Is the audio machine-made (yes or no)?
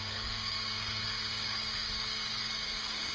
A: yes